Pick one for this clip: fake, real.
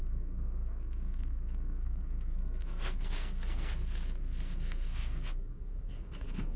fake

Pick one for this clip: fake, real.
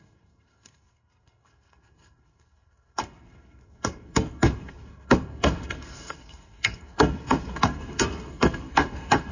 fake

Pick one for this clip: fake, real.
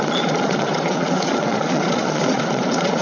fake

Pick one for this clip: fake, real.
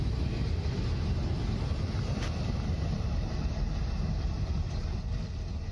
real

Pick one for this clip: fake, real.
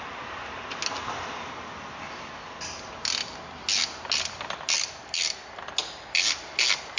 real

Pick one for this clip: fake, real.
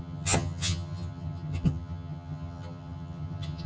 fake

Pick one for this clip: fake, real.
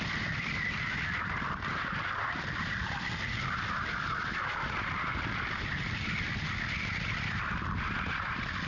real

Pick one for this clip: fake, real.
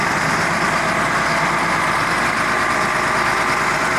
real